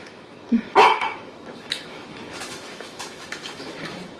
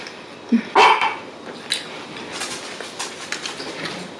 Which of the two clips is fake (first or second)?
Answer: first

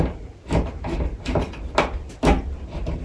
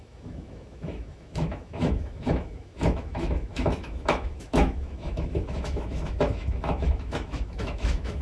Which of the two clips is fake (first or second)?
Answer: second